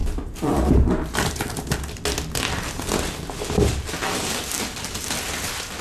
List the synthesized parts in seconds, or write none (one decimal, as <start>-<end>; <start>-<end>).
0.0-1.4